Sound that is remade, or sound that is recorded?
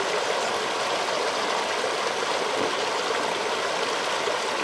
recorded